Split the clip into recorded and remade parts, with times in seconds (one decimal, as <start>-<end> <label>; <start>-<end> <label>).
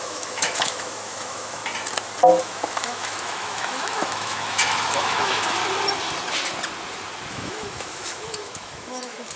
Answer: 0.0-1.6 remade; 1.6-2.4 recorded; 2.4-5.6 remade; 5.6-7.3 recorded; 7.3-9.4 remade